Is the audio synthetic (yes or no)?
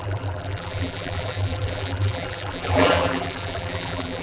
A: yes